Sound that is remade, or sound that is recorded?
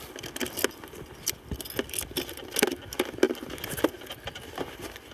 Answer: recorded